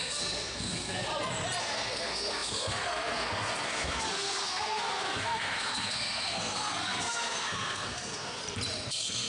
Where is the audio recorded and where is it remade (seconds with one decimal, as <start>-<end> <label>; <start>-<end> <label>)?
0.0-1.1 remade; 1.1-1.6 recorded; 1.6-8.4 remade; 8.4-8.9 recorded; 8.9-9.3 remade

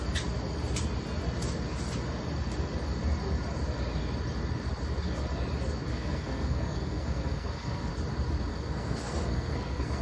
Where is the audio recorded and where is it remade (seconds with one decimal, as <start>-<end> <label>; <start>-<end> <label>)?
0.0-5.9 recorded; 5.9-7.9 remade; 7.9-8.5 recorded; 8.5-10.0 remade

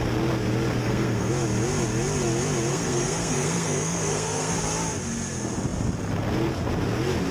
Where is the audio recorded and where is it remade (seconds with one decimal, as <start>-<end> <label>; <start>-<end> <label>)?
0.0-0.8 recorded; 0.8-1.3 remade; 1.3-2.7 recorded; 2.7-4.5 remade; 4.5-7.3 recorded

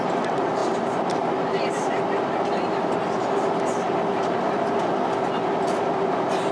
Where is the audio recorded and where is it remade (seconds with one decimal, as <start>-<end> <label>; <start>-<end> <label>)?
0.0-6.5 recorded

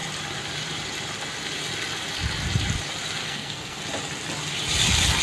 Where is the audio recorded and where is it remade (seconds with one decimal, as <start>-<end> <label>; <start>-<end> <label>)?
0.0-3.2 recorded; 3.2-3.8 remade; 3.8-5.2 recorded